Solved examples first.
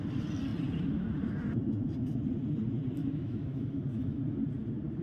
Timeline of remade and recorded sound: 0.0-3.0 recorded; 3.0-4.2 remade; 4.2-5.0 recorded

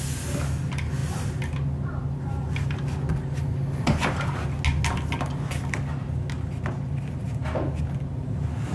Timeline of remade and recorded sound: 0.0-8.7 recorded

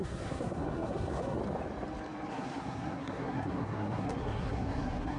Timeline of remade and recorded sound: 0.0-1.4 remade; 1.4-2.3 recorded; 2.3-5.2 remade